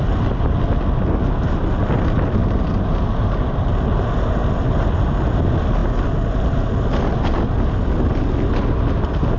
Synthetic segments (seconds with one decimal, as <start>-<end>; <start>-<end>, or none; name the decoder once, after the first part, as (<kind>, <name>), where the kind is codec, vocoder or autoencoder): 2.4-4.0 (vocoder, BigVGAN v2); 4.4-5.0